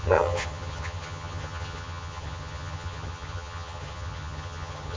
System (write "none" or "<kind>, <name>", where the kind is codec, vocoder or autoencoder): vocoder, HiFi-GAN